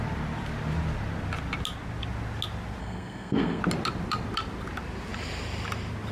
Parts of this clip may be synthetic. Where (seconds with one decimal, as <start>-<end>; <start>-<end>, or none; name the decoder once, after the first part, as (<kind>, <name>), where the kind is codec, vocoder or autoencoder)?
2.8-3.6 (codec, SNAC)